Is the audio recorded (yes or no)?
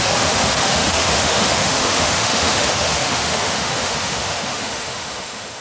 no